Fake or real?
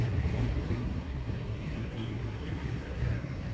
fake